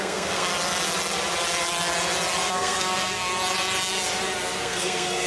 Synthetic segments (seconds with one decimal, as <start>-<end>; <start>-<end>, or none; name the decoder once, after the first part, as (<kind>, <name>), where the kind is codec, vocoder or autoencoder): 0.0-0.5 (codec, SNAC); 2.5-3.3; 4.6-5.3